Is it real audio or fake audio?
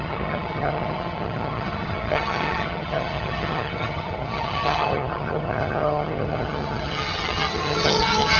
fake